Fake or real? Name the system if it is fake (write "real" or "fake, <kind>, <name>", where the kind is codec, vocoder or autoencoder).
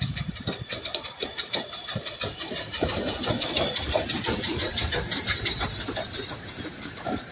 fake, vocoder, BigVGAN v2